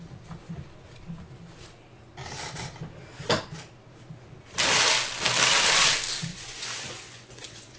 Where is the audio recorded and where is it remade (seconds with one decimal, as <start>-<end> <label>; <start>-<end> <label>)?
0.0-6.3 recorded; 6.3-7.8 remade